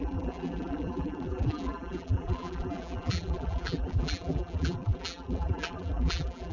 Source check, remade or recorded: remade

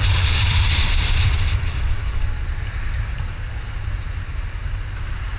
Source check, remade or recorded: remade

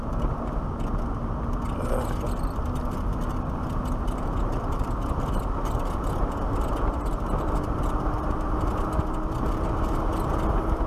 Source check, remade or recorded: recorded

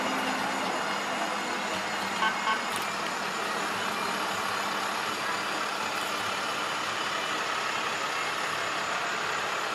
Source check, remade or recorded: recorded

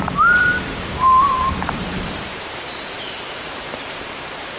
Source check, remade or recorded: remade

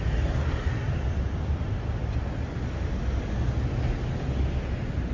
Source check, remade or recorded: recorded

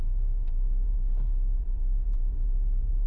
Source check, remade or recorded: remade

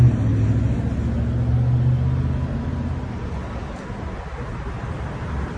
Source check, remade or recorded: recorded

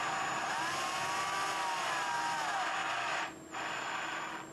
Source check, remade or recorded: recorded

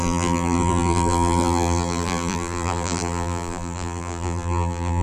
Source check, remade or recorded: remade